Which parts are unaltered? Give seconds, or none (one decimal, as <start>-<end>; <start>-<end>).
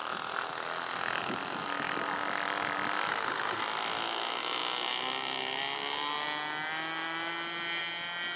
0.0-3.1; 3.6-8.4